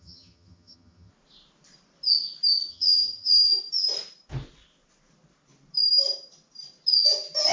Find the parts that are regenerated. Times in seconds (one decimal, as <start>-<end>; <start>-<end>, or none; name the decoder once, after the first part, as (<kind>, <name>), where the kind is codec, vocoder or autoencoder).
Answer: 0.0-1.1 (vocoder, HiFi-GAN); 2.7-3.5